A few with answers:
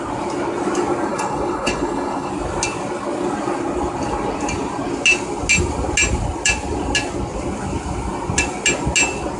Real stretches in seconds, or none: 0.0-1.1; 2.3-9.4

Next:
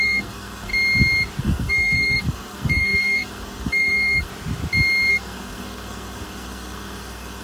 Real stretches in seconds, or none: 0.7-1.4; 4.3-5.1

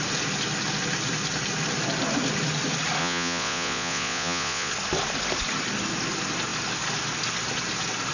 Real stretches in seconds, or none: 0.0-3.0; 4.7-8.1

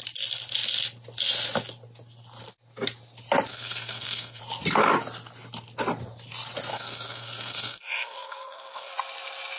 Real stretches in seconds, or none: 0.0-3.5; 4.4-6.7; 8.9-9.6

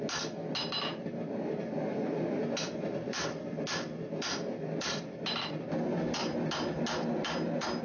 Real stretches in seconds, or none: 0.0-7.8

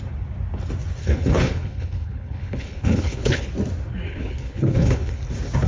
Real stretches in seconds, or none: 0.0-1.0; 3.5-4.1; 5.2-5.7

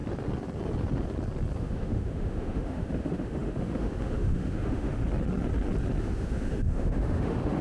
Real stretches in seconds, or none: 0.0-1.6; 5.0-6.0

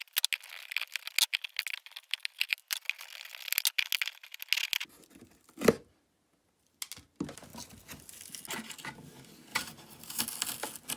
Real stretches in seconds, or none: 0.0-9.5; 10.2-11.0